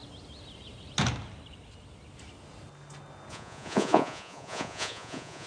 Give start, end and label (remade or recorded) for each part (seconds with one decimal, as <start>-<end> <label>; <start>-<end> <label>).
0.0-3.3 recorded; 3.3-5.5 remade